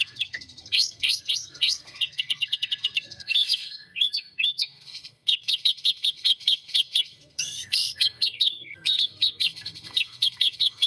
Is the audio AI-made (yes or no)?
yes